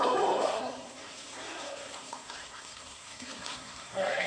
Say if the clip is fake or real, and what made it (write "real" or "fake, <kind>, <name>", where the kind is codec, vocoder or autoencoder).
fake, codec, SNAC